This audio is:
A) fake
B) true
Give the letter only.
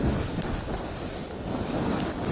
B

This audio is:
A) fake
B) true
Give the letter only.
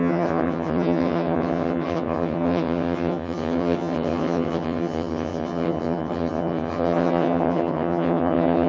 A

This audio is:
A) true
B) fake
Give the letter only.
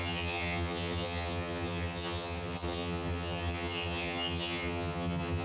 B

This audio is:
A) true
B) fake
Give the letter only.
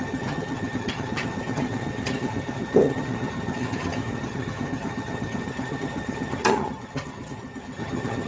B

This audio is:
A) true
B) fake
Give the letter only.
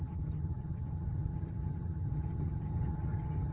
B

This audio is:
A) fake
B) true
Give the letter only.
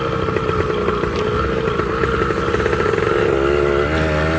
B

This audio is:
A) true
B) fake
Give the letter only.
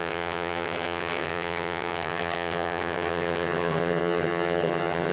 B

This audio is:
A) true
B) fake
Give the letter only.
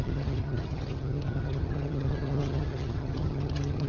B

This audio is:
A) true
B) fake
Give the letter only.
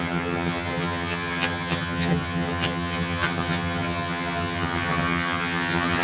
B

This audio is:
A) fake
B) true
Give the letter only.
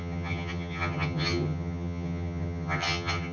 A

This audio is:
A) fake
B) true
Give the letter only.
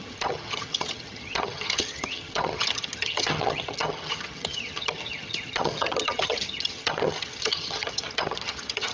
A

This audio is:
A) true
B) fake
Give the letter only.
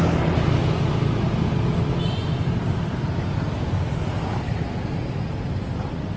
A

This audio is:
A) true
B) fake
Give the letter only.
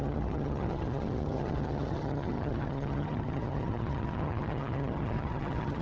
B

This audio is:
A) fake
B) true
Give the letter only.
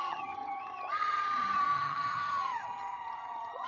A